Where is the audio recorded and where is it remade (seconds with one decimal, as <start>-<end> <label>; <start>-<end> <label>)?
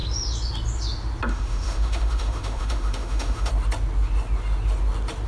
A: 0.0-1.3 recorded; 1.3-3.5 remade; 3.5-5.3 recorded